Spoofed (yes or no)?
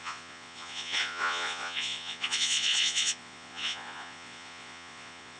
yes